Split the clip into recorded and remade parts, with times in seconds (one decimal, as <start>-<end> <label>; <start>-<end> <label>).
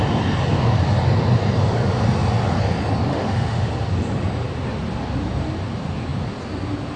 0.0-3.1 recorded; 3.1-3.7 remade; 3.7-7.0 recorded